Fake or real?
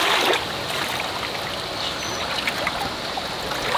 real